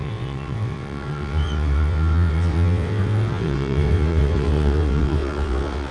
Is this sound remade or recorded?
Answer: remade